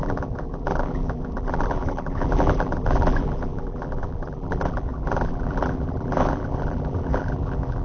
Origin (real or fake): fake